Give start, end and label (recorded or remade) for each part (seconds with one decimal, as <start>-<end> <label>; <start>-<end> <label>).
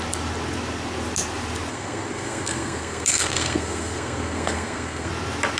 0.0-1.7 recorded; 1.7-5.1 remade; 5.1-5.6 recorded